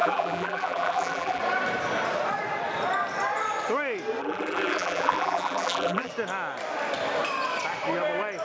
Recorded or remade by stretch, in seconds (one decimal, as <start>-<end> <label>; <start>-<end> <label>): 0.0-1.4 remade; 1.4-4.2 recorded; 4.2-6.1 remade; 6.1-8.4 recorded